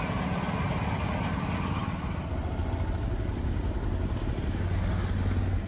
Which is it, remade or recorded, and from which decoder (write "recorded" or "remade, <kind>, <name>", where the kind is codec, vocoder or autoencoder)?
recorded